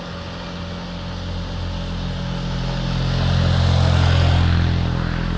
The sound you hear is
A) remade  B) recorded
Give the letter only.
B